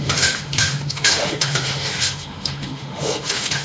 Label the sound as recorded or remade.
remade